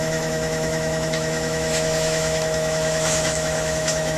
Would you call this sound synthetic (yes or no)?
yes